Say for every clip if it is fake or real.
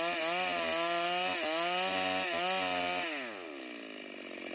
real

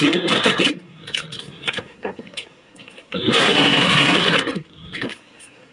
fake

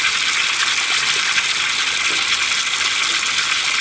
real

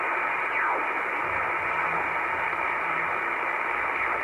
real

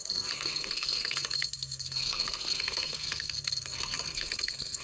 fake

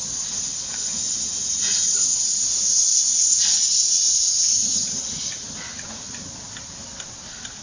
real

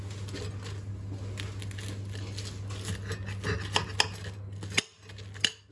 real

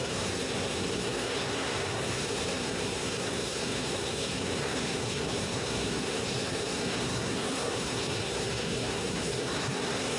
fake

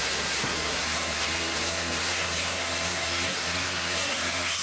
fake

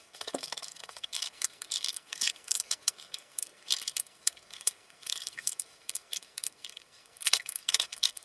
fake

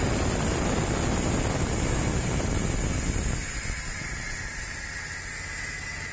real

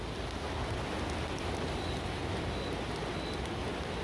real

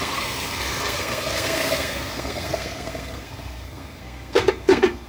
fake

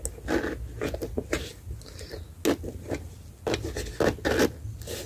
real